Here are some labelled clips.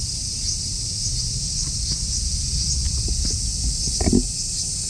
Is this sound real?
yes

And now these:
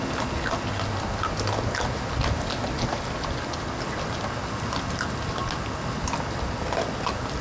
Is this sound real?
yes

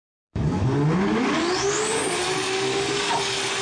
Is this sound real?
no